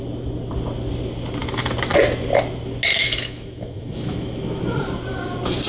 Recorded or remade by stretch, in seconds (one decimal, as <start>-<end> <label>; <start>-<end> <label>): 0.0-2.9 recorded; 2.9-4.6 remade; 4.6-5.7 recorded